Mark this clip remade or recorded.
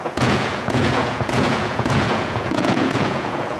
remade